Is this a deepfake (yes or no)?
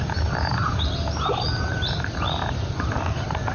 no